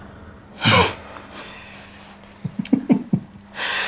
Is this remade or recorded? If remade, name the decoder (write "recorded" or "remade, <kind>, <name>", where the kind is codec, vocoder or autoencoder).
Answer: recorded